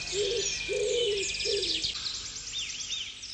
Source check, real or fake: real